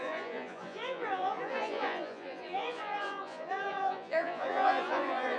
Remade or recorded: remade